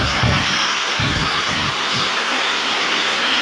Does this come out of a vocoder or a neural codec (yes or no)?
yes